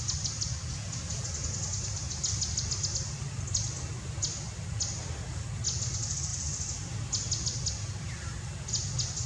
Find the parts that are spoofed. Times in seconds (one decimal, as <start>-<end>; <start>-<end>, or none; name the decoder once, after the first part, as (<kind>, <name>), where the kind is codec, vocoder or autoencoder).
none